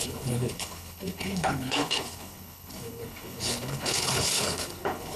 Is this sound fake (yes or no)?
yes